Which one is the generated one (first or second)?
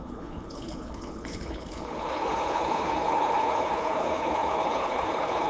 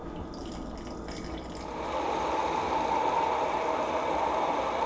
first